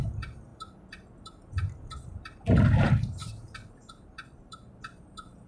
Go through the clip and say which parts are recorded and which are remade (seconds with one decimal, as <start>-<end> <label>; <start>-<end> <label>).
0.0-0.5 remade; 0.5-2.8 recorded; 2.8-5.5 remade